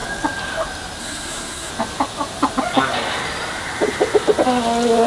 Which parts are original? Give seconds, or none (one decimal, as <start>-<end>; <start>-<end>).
0.0-1.0; 1.7-5.1